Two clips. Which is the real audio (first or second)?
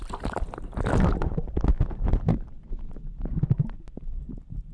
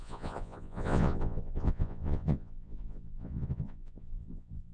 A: first